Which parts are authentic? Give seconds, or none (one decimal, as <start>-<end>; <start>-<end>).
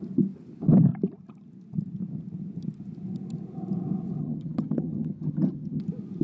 0.0-4.2; 5.8-6.2